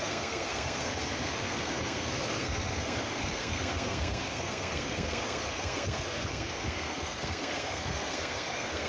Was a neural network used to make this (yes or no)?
yes